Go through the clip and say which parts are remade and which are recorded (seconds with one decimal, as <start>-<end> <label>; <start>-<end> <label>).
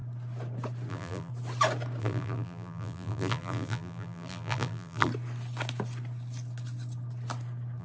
0.0-0.9 recorded; 0.9-1.3 remade; 1.3-2.0 recorded; 2.0-5.1 remade; 5.1-7.8 recorded